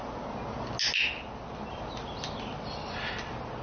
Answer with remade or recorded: recorded